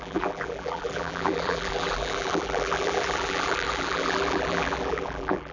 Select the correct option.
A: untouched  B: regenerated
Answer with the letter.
B